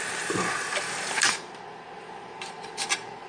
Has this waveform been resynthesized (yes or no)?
yes